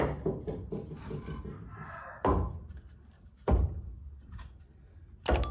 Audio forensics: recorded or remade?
recorded